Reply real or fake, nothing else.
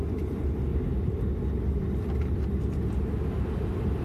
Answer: real